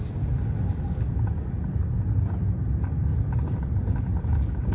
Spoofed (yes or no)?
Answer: yes